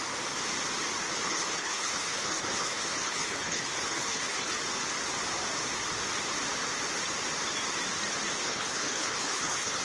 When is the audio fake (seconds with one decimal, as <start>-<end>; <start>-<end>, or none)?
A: 1.3-4.6; 8.4-9.8